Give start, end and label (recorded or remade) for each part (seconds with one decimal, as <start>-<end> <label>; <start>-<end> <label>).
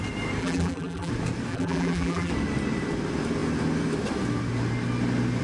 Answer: 0.0-0.4 recorded; 0.4-1.1 remade; 1.1-1.5 recorded; 1.5-2.3 remade; 2.3-5.4 recorded